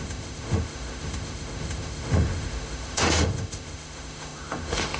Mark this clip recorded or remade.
remade